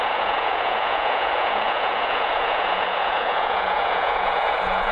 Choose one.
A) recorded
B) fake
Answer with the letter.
B